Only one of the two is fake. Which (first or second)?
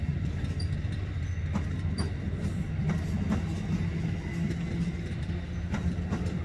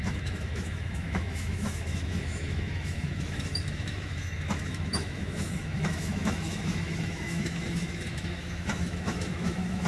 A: second